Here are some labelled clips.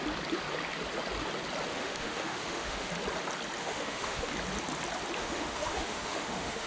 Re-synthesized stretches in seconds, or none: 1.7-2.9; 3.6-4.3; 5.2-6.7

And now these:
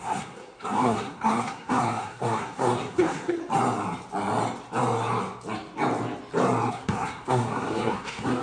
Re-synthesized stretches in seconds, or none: 0.0-3.4; 6.7-8.4

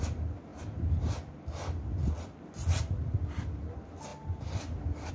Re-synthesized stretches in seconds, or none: none